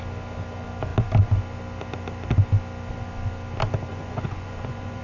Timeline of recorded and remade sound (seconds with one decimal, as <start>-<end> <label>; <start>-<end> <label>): 0.0-3.9 recorded; 3.9-5.0 remade